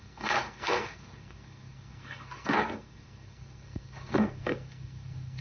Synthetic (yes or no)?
yes